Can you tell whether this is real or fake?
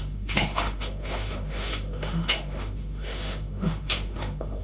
fake